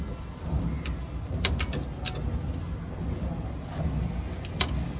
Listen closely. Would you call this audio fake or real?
real